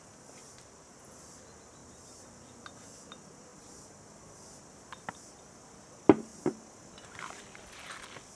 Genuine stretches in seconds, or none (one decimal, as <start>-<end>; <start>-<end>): 0.0-0.4; 1.0-1.8; 2.3-3.5; 4.5-6.3; 7.4-8.4